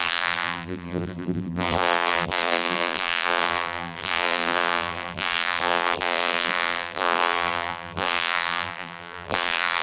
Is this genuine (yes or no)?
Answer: no